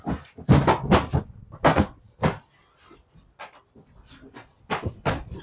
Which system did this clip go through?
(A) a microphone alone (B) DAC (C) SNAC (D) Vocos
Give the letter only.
A